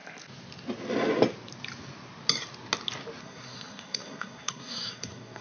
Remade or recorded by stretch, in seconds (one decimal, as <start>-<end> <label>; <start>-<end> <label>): 0.0-3.2 recorded; 3.2-5.4 remade